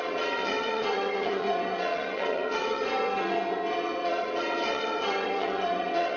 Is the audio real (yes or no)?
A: no